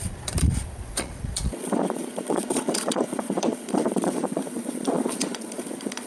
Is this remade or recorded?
remade